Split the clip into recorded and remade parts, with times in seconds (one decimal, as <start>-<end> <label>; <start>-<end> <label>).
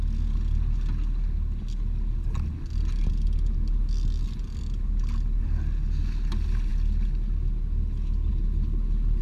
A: 0.0-9.2 recorded